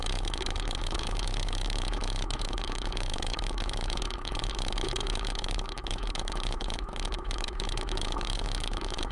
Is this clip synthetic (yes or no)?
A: yes